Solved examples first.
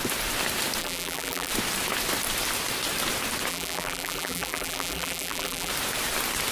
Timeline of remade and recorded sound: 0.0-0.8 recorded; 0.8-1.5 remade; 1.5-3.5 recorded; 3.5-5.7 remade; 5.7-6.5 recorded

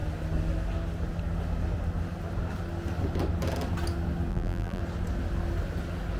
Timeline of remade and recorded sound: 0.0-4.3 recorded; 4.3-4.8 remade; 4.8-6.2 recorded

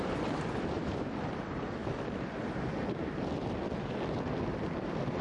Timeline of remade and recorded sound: 0.0-1.8 remade; 1.8-5.2 recorded